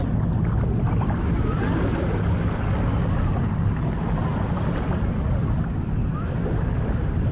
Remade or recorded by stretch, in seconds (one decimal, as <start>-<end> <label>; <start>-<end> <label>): 0.0-7.3 recorded